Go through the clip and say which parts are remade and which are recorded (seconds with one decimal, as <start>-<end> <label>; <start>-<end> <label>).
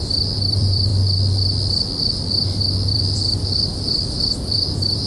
0.0-0.9 remade; 0.9-2.6 recorded; 2.6-5.1 remade